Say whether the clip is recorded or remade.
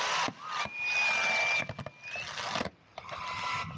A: recorded